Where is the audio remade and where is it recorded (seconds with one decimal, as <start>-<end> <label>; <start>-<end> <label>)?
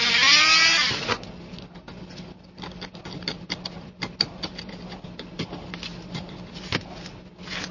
0.0-7.7 recorded